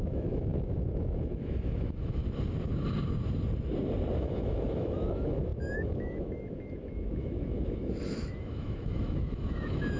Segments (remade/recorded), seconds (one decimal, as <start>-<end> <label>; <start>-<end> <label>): 0.0-2.2 remade; 2.2-4.2 recorded; 4.2-10.0 remade

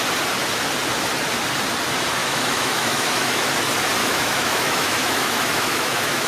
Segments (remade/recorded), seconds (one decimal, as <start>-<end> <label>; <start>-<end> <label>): 0.0-2.2 recorded; 2.2-3.5 remade; 3.5-4.0 recorded; 4.0-6.3 remade

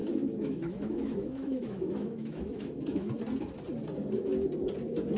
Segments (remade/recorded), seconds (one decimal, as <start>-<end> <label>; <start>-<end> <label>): 0.0-3.1 remade; 3.1-5.2 recorded

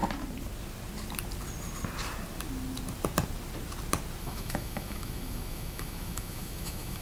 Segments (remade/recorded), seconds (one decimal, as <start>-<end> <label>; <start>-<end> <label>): 0.0-4.2 recorded; 4.2-7.0 remade

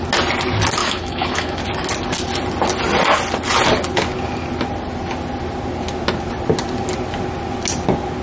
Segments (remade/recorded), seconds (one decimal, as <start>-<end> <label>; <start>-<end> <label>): 0.0-0.8 recorded; 0.8-1.6 remade; 1.6-8.2 recorded

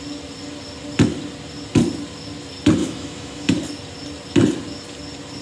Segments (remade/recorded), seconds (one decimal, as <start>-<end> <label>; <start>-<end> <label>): 0.0-2.8 recorded; 2.8-3.5 remade; 3.5-5.4 recorded

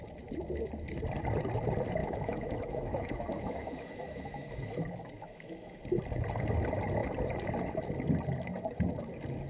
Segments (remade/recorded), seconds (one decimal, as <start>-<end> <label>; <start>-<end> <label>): 0.0-2.0 recorded; 2.0-5.8 remade; 5.8-9.5 recorded

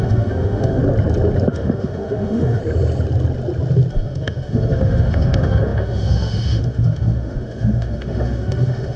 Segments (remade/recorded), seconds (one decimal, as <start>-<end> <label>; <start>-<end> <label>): 0.0-0.8 remade; 0.8-1.5 recorded; 1.5-2.6 remade; 2.6-3.9 recorded; 3.9-9.0 remade